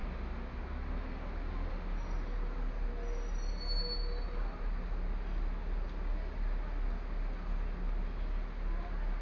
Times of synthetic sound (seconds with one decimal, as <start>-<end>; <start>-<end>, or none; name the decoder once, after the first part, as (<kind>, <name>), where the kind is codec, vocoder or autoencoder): none